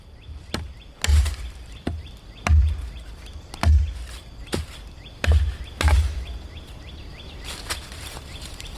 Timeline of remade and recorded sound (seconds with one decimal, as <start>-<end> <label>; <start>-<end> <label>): 0.0-8.8 recorded